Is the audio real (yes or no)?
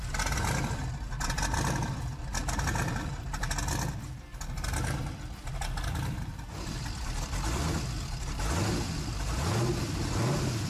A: yes